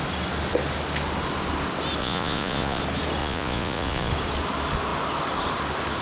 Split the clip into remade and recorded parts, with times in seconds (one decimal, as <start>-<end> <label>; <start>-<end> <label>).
0.0-2.0 recorded; 2.0-2.8 remade; 2.8-3.2 recorded; 3.2-4.1 remade; 4.1-6.0 recorded